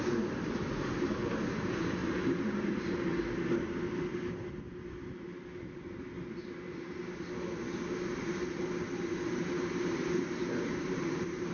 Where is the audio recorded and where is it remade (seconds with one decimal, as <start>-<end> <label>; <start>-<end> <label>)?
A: 0.0-2.0 recorded; 2.0-2.7 remade; 2.7-10.4 recorded; 10.4-11.5 remade